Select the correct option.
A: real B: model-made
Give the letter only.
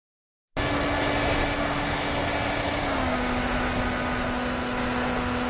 A